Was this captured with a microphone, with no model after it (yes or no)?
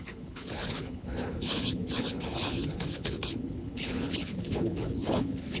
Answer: no